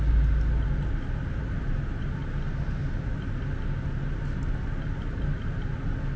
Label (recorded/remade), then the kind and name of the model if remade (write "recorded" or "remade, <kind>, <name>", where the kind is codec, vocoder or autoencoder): recorded